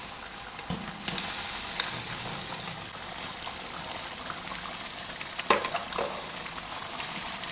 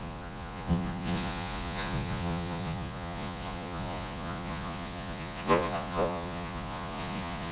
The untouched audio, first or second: first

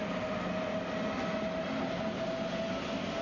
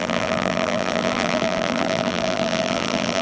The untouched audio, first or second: first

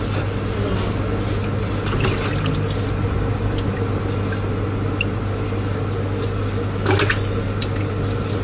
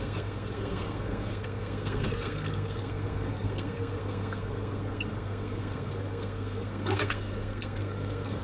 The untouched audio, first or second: first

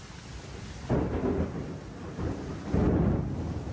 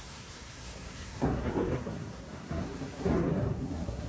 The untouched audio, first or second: first